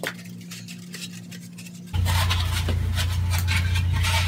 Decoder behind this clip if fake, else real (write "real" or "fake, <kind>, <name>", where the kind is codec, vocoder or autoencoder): real